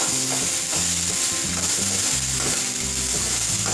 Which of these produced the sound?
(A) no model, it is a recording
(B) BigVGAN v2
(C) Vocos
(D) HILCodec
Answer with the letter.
A